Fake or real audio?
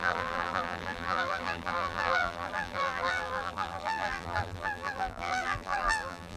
fake